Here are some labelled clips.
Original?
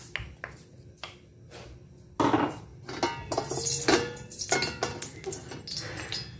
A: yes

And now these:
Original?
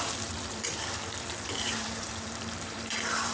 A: no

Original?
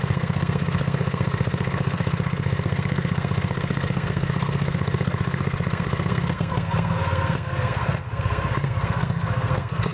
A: no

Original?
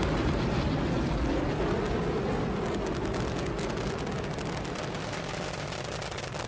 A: yes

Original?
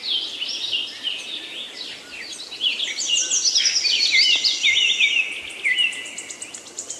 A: yes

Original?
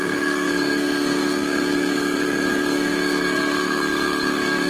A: no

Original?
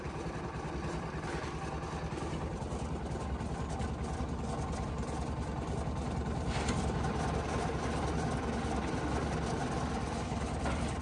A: yes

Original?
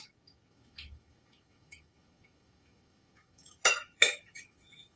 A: no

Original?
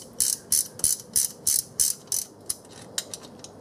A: yes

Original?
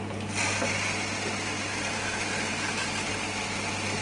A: yes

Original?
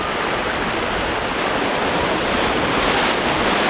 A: yes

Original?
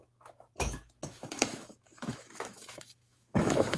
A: no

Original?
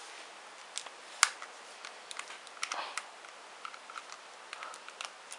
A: yes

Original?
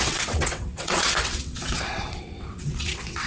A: no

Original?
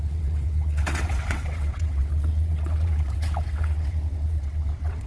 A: no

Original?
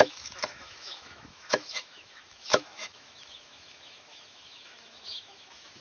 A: no